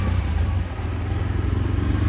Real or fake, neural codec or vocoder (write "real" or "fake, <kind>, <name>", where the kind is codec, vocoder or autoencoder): real